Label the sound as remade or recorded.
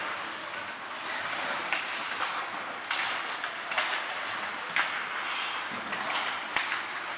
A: recorded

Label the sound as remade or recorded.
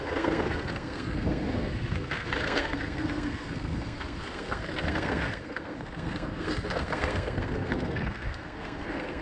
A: remade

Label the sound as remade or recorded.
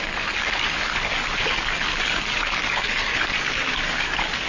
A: remade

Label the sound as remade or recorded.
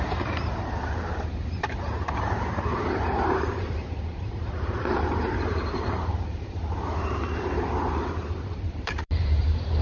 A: remade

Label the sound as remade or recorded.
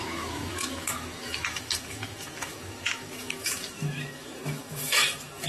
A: remade